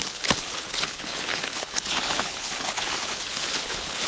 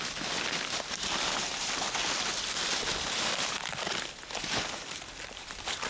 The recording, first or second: second